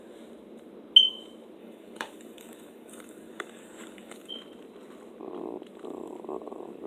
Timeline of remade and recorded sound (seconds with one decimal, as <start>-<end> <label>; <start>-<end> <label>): 0.0-1.6 recorded; 1.6-4.3 remade; 4.3-6.9 recorded